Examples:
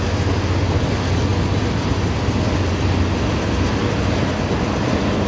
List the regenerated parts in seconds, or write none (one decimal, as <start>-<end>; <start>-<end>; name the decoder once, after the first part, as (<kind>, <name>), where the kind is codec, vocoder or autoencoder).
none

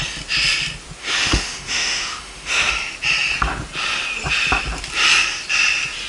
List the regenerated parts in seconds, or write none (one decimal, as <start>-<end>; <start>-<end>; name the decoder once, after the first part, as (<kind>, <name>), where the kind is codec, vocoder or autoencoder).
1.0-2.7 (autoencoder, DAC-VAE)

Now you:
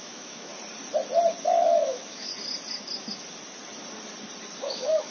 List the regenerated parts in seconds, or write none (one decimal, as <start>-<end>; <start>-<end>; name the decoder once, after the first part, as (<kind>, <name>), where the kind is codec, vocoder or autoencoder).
0.0-0.5 (autoencoder, DAC-VAE); 1.4-2.3; 4.6-5.1